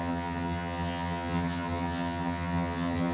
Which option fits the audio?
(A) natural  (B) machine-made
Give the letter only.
B